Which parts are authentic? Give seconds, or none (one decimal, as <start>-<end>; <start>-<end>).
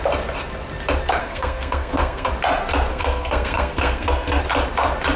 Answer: 0.0-1.2; 2.3-2.9; 4.4-5.2